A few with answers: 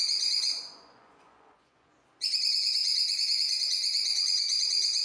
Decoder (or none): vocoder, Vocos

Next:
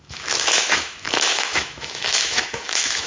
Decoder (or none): autoencoder, DAC-VAE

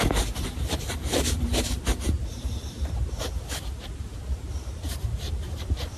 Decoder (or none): vocoder, BigVGAN v2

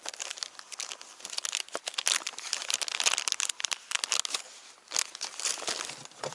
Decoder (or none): none